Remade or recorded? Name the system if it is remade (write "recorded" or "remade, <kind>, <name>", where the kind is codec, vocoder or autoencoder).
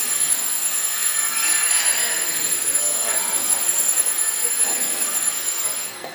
remade, codec, SNAC